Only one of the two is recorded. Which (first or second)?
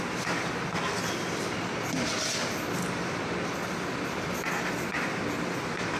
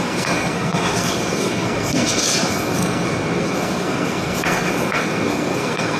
first